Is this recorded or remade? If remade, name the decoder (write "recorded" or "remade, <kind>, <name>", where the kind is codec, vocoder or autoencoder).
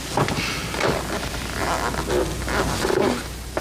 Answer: recorded